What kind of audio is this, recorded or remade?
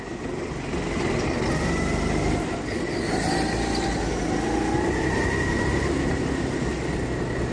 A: recorded